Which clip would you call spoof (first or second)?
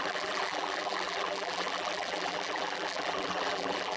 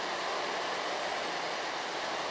first